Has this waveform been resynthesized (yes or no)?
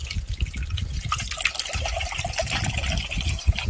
no